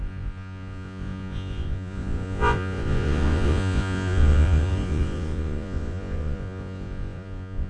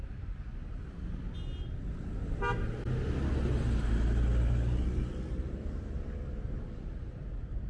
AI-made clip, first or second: first